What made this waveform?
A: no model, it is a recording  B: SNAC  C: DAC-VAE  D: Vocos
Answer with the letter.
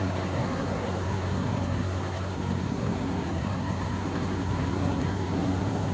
B